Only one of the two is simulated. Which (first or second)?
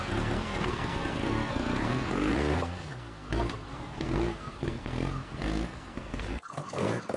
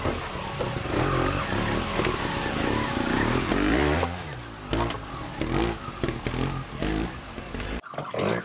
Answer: first